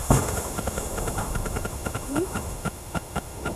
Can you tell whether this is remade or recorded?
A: remade